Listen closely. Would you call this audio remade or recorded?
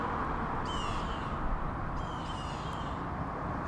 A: recorded